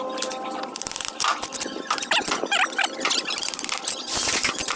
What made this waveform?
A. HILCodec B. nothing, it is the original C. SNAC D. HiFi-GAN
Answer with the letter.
B